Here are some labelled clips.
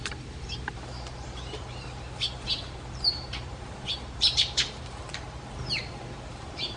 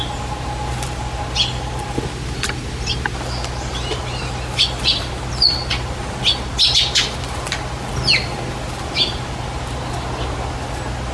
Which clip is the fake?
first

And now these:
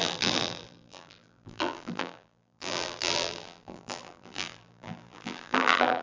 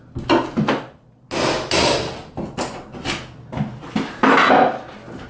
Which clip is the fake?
first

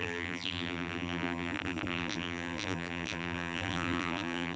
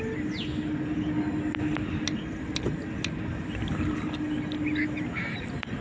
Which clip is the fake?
first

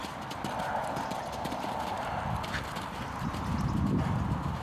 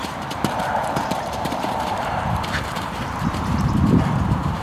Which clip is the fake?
second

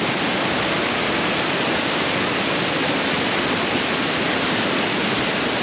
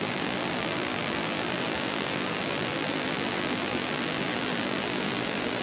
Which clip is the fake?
second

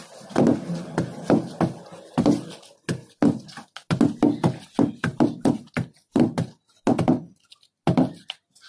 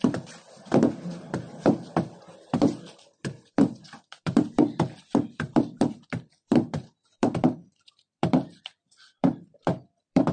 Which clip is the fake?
second